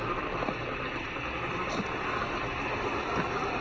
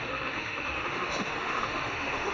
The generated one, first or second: second